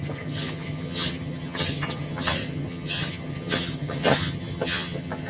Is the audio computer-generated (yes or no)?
yes